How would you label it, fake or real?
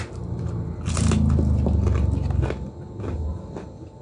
real